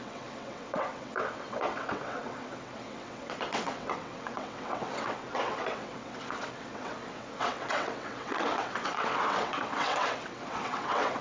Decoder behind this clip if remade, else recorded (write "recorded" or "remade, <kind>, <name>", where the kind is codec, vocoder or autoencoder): remade, vocoder, WaveNeXt